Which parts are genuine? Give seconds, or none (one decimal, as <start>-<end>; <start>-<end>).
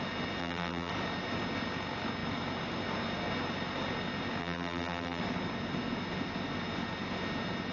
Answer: 0.0-0.4; 0.9-4.4; 5.2-7.7